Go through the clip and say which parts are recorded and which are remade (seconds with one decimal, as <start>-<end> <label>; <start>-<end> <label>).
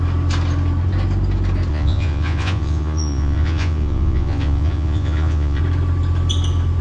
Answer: 0.0-1.7 recorded; 1.7-5.6 remade; 5.6-6.8 recorded